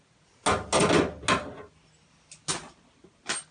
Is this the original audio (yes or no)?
yes